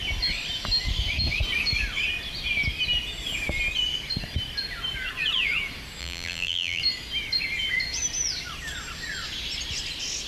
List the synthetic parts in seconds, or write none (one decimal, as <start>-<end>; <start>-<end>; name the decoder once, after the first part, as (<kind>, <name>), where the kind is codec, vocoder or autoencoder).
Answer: 6.0-6.8 (vocoder, BigVGAN v2)